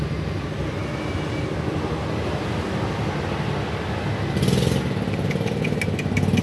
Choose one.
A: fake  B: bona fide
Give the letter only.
B